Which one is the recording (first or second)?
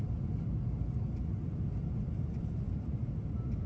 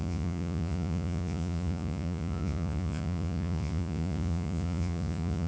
first